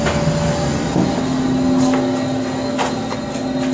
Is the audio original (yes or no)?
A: yes